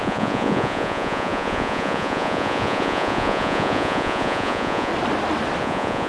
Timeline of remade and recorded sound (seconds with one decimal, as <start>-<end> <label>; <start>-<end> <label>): 0.0-4.9 remade; 4.9-5.6 recorded; 5.6-6.1 remade